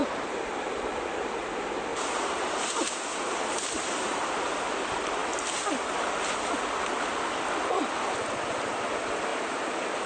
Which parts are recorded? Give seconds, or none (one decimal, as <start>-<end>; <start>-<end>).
1.0-1.9; 4.3-9.3